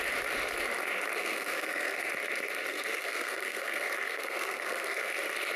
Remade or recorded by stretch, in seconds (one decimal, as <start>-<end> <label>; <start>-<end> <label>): 0.0-1.2 recorded; 1.2-2.1 remade; 2.1-2.7 recorded; 2.7-5.1 remade; 5.1-5.6 recorded